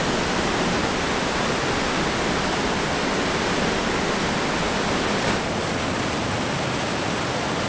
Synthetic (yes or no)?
no